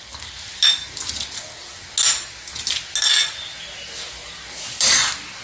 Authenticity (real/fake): real